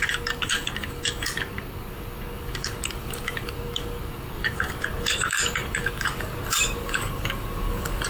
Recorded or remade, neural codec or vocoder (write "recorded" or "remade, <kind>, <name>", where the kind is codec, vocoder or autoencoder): remade, codec, DAC